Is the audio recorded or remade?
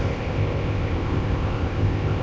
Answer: remade